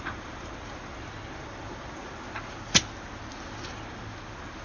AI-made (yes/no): no